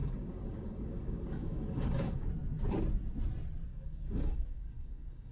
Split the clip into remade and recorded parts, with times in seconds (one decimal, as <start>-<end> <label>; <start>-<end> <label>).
0.0-2.3 remade; 2.3-3.7 recorded; 3.7-5.3 remade